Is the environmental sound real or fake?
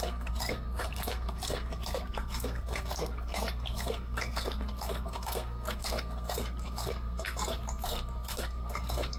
fake